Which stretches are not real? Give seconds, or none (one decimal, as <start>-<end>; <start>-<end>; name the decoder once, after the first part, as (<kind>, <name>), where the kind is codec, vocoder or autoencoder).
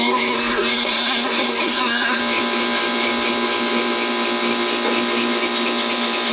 0.0-2.2 (codec, SNAC)